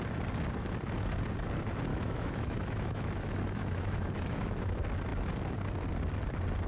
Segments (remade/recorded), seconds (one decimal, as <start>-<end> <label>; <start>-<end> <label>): 0.0-1.9 recorded; 1.9-4.6 remade; 4.6-6.7 recorded